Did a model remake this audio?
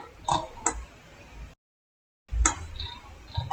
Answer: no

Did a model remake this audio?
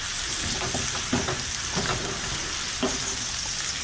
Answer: no